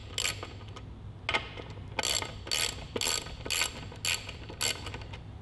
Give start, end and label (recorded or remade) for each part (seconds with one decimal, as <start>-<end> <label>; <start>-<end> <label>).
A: 0.0-5.4 recorded